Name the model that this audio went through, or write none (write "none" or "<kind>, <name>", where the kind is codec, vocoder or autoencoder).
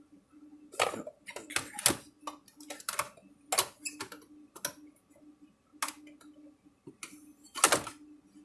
none